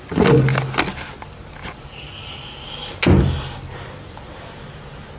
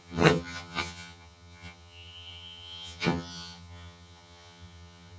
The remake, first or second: second